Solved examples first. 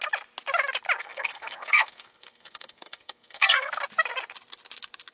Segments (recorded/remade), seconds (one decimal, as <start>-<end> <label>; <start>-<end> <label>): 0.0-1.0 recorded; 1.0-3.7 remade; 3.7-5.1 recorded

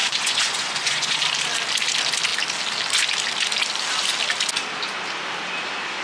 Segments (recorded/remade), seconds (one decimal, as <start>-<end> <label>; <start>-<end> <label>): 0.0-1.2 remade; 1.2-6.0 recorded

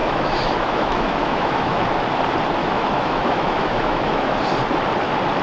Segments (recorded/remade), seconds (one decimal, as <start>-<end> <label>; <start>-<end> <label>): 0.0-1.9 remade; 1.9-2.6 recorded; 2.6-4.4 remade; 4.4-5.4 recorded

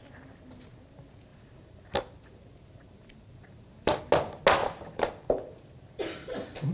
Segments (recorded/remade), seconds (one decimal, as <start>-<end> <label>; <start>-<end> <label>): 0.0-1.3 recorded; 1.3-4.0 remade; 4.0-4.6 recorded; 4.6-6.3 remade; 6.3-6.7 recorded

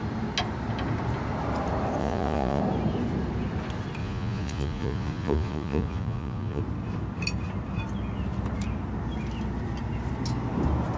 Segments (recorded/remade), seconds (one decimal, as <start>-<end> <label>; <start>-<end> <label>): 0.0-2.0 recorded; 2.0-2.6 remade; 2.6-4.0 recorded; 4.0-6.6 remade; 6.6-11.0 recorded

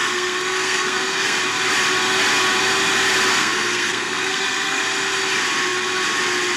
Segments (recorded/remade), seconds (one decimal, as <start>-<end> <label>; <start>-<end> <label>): 0.0-1.4 remade; 1.4-3.3 recorded; 3.3-4.8 remade; 4.8-6.6 recorded